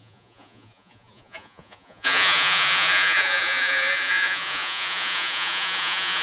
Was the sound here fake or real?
fake